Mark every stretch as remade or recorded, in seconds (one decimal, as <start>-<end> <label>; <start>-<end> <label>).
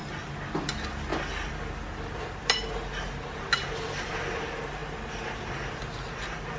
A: 0.0-6.6 recorded